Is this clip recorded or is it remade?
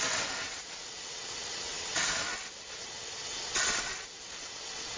remade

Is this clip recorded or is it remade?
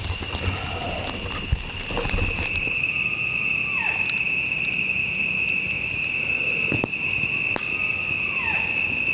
recorded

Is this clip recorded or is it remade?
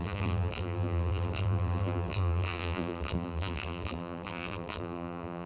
remade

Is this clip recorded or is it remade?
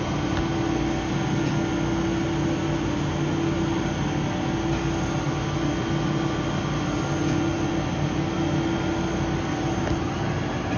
recorded